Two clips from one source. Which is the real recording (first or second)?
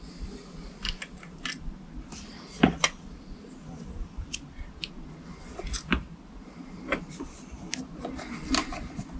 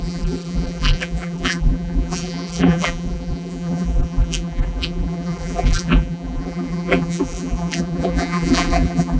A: first